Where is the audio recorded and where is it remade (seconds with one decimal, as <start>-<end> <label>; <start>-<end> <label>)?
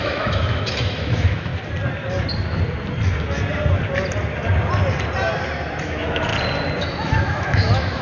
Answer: 0.0-1.5 remade; 1.5-5.8 recorded; 5.8-6.3 remade; 6.3-6.8 recorded; 6.8-8.0 remade